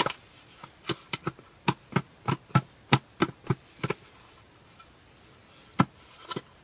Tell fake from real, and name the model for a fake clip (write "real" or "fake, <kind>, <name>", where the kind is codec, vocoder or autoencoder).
real